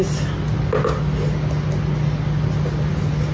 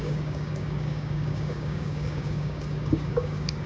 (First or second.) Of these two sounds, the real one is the first